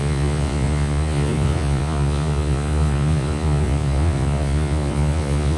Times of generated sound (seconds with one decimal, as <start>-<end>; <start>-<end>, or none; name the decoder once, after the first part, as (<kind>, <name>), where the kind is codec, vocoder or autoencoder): 0.0-5.6 (vocoder, Vocos)